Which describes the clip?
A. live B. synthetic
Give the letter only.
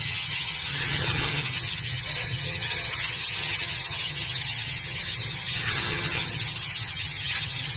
B